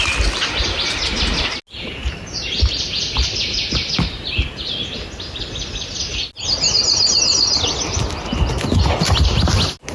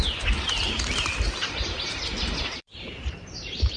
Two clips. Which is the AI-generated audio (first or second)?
second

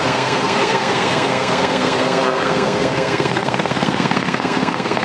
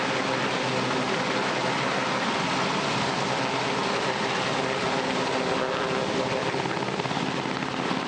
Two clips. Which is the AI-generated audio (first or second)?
first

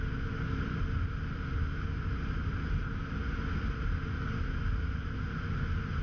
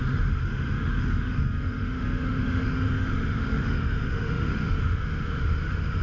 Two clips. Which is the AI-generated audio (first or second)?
second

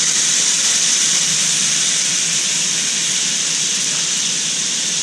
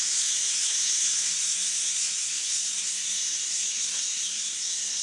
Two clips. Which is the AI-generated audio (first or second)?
second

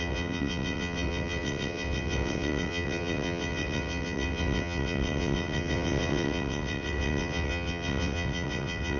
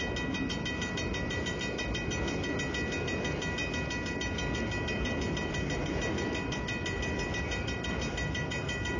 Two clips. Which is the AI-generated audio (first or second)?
first